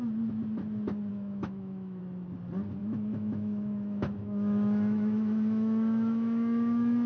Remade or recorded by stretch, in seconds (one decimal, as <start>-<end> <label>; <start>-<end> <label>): 0.0-1.1 recorded; 1.1-2.0 remade; 2.0-2.8 recorded; 2.8-7.1 remade